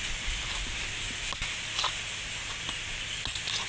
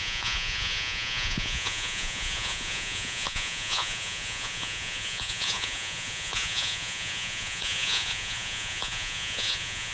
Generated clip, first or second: second